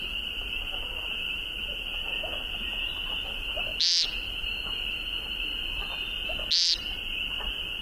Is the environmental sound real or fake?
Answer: real